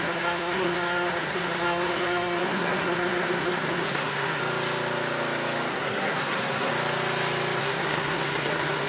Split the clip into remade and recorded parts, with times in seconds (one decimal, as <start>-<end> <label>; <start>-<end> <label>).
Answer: 0.0-4.4 remade; 4.4-5.7 recorded; 5.7-6.7 remade; 6.7-7.6 recorded; 7.6-8.9 remade